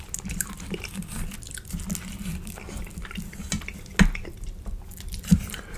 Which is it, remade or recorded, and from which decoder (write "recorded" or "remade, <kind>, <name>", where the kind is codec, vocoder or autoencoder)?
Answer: recorded